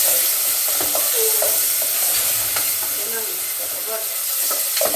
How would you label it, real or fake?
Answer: real